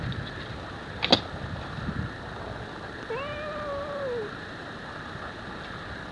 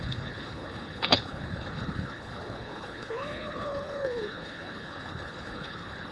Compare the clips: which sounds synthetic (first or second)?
second